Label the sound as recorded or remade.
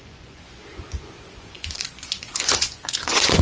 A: remade